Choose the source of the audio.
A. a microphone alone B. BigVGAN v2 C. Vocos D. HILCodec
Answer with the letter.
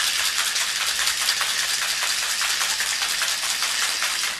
A